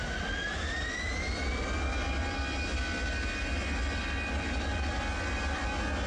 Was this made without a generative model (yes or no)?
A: yes